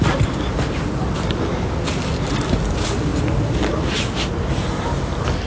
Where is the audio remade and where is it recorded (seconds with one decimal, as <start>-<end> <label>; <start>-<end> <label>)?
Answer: 0.0-5.5 recorded

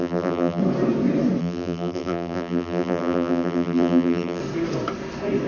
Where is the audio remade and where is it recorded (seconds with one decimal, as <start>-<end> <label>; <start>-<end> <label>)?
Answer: 0.0-0.6 remade; 0.6-1.4 recorded; 1.4-4.4 remade; 4.4-5.5 recorded

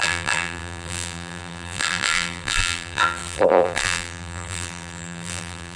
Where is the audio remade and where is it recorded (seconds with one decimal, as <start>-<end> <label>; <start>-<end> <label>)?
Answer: 0.0-5.8 remade

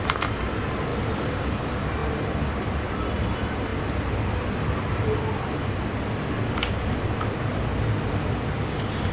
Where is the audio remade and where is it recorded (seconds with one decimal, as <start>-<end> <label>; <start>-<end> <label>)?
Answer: 0.0-0.9 recorded; 0.9-1.6 remade; 1.6-9.1 recorded

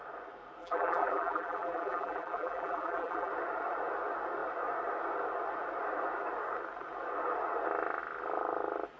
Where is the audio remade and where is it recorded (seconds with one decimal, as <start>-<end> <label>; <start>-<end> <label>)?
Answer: 0.0-0.6 recorded; 0.6-3.3 remade; 3.3-9.0 recorded